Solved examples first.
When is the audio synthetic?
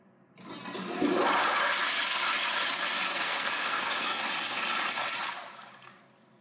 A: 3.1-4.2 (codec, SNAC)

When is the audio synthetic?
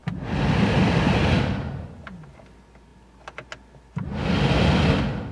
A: none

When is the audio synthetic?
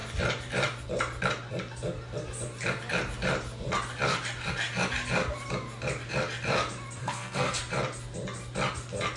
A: 7.0-7.6 (codec, SNAC)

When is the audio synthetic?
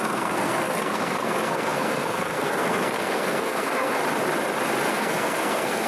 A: 0.0-4.0 (codec, SNAC); 4.9-5.9